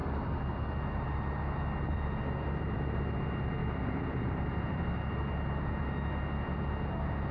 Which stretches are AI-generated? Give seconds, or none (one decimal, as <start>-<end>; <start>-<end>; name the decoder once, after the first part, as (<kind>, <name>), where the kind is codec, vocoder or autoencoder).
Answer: 3.6-4.8 (vocoder, BigVGAN v2)

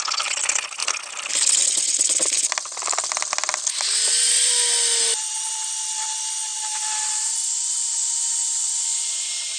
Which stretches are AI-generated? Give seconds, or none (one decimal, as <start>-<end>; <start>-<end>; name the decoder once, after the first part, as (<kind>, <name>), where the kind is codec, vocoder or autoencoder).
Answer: 6.5-7.3 (vocoder, BigVGAN v2); 8.9-9.6

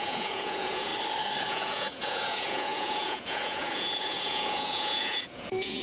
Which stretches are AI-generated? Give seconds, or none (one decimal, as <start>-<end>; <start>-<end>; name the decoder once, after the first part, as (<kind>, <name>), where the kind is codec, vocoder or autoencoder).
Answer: 0.0-0.9 (vocoder, Vocos); 1.5-5.8